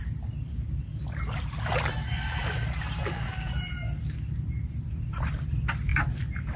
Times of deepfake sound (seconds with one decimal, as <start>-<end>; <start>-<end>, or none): none